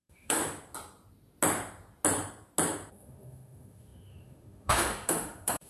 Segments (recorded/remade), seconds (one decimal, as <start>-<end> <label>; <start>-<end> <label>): 0.0-0.4 remade; 0.4-2.9 recorded; 2.9-5.7 remade